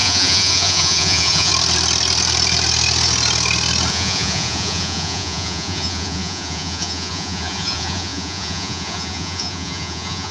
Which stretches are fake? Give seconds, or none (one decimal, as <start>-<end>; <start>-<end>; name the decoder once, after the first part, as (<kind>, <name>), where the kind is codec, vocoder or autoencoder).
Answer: 0.0-1.5 (vocoder, Vocos); 3.9-10.3